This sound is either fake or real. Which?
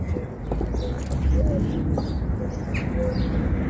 real